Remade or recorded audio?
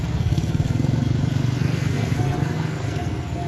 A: remade